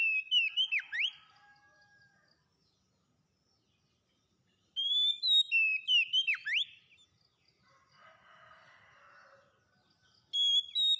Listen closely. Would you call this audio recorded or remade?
recorded